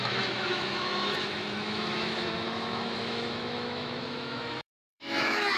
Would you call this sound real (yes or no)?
no